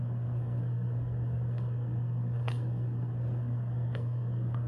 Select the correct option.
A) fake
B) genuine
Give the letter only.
A